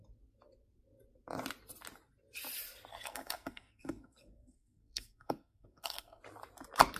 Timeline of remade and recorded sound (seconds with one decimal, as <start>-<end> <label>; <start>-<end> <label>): 0.0-2.9 recorded; 2.9-6.2 remade; 6.2-7.0 recorded